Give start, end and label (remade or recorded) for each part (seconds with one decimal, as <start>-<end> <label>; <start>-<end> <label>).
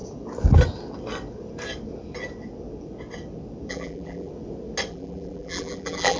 0.0-3.7 recorded; 3.7-4.3 remade; 4.3-4.9 recorded; 4.9-6.2 remade